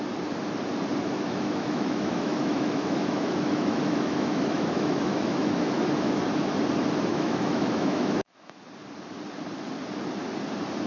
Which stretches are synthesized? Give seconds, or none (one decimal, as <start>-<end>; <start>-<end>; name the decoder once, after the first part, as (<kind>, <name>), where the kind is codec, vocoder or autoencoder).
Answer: 1.0-6.2 (autoencoder, DAC-VAE); 7.1-8.6